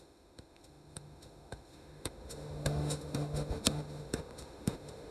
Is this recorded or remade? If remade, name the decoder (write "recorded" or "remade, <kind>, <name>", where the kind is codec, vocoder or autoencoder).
remade, autoencoder, DAC-VAE